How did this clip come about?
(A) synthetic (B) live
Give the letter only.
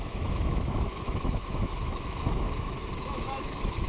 A